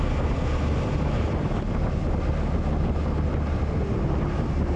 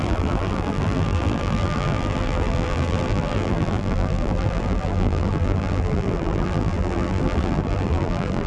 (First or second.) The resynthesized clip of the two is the second